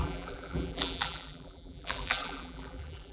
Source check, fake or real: fake